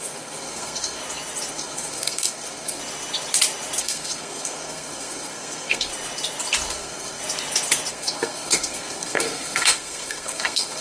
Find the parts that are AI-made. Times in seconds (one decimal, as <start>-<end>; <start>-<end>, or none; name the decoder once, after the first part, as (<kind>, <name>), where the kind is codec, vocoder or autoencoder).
0.0-1.0 (codec, SNAC); 1.5-2.8; 3.8-5.9; 6.7-7.2; 7.9-10.8